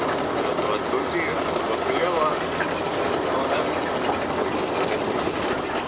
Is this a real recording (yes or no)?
yes